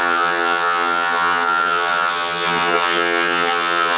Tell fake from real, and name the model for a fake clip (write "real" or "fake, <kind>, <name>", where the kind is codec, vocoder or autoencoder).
fake, vocoder, HiFi-GAN